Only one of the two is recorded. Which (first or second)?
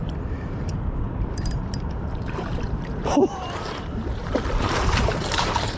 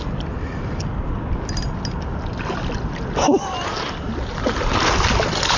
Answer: second